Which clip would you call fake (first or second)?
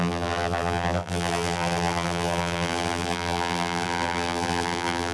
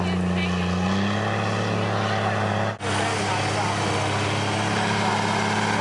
first